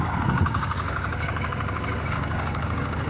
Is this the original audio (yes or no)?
no